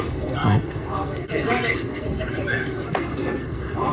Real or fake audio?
fake